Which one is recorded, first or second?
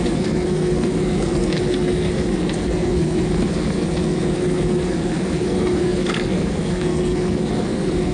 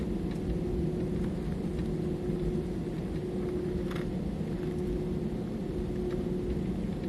second